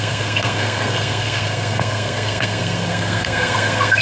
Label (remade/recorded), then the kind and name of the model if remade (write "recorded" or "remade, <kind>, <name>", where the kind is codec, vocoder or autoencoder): remade, codec, SNAC